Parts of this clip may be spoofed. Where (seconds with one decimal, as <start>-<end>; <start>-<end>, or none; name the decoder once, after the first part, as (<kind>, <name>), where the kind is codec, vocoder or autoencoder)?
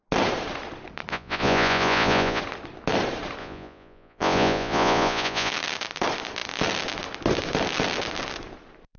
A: 1.1-2.4 (vocoder, Vocos); 3.4-5.5